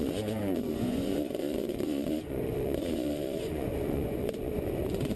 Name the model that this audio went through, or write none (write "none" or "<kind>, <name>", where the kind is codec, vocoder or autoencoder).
vocoder, Vocos